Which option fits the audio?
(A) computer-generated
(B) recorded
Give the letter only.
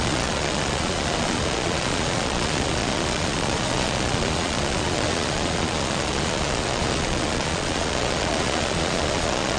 A